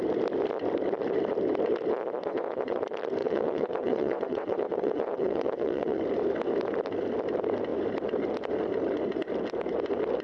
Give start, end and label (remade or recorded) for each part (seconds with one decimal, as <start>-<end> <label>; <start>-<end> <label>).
0.0-2.2 recorded; 2.2-2.8 remade; 2.8-3.2 recorded; 3.2-6.0 remade; 6.0-10.2 recorded